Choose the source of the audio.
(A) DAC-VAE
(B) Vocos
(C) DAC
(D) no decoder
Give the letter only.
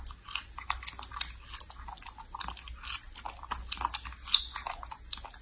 D